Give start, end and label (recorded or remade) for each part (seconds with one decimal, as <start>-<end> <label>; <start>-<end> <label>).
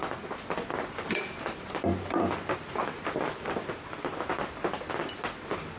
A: 0.0-5.8 recorded